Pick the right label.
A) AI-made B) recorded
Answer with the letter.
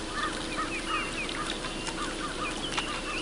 B